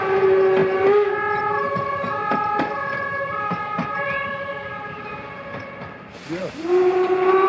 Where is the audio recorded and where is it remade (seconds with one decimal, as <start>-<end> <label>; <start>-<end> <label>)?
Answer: 0.0-3.1 recorded; 3.1-5.1 remade; 5.1-6.4 recorded; 6.4-7.5 remade